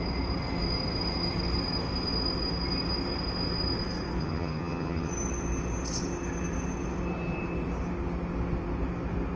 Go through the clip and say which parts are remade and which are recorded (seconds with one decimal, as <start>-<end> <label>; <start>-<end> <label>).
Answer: 0.0-4.2 recorded; 4.2-5.1 remade; 5.1-9.4 recorded